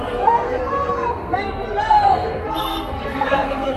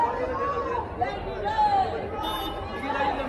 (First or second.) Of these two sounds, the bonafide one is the second